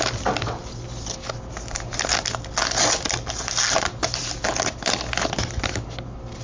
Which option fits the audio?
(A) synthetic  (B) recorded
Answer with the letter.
B